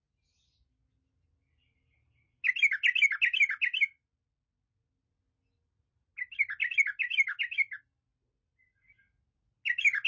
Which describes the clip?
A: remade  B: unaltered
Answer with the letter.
B